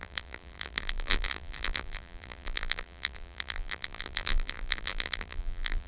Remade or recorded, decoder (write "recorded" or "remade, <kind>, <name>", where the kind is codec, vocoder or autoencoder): remade, vocoder, BigVGAN v2